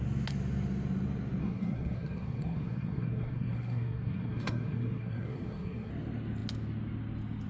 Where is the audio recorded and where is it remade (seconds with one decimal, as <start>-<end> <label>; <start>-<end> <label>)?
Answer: 0.0-1.4 recorded; 1.4-5.9 remade; 5.9-7.5 recorded